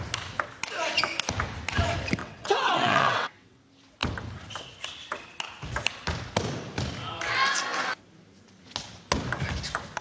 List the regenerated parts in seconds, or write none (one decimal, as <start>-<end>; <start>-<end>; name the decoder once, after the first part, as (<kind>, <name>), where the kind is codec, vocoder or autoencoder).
2.2-3.6 (vocoder, WaveNeXt)